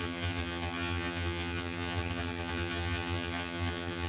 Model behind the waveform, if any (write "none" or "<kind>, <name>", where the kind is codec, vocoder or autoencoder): vocoder, HiFi-GAN